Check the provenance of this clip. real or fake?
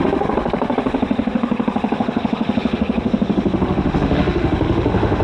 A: fake